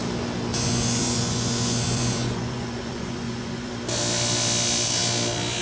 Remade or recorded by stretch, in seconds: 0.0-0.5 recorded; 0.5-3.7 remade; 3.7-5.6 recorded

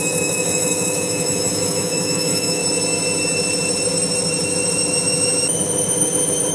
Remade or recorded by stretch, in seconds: 0.0-2.6 remade; 2.6-6.5 recorded

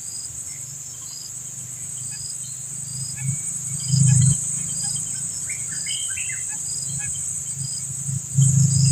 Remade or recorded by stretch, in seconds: 0.0-2.9 recorded; 2.9-5.0 remade; 5.0-8.9 recorded

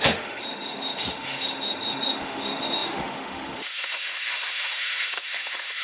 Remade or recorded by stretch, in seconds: 0.0-5.8 remade

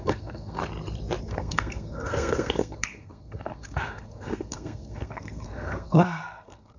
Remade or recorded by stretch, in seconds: 0.0-0.6 remade; 0.6-1.2 recorded; 1.2-6.8 remade

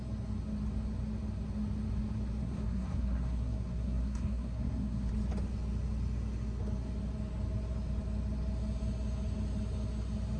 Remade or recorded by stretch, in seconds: 0.0-2.4 recorded; 2.4-5.1 remade; 5.1-10.4 recorded

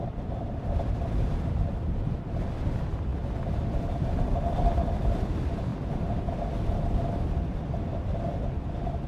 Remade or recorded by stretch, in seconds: 0.0-9.1 recorded

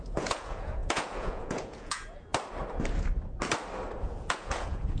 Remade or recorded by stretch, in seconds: 0.0-2.3 remade; 2.3-4.0 recorded; 4.0-5.0 remade